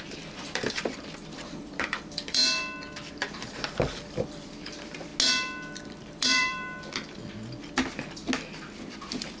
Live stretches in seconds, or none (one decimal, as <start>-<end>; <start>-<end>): 2.4-3.1; 5.1-6.1; 7.2-8.5